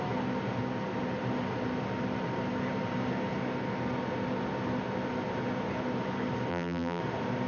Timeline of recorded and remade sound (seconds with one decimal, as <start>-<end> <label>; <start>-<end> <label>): 0.0-6.5 recorded; 6.5-7.0 remade; 7.0-7.5 recorded